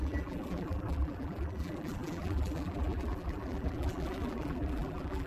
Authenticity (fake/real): fake